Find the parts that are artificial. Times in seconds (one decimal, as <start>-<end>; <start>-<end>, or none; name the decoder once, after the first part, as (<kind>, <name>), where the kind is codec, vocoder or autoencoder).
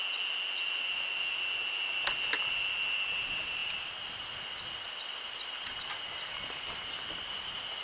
none